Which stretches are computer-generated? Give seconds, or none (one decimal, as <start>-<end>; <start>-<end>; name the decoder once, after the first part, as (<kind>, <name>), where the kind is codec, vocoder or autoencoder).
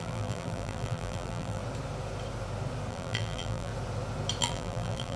0.0-1.6 (vocoder, BigVGAN v2); 2.9-3.7; 4.4-5.2